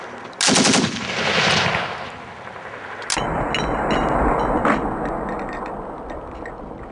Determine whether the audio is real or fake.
real